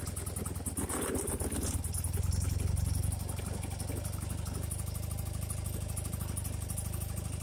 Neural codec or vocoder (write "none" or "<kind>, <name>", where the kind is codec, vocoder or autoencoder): none